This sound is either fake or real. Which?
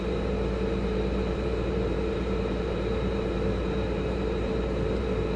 fake